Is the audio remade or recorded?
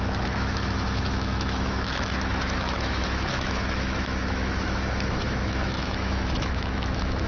remade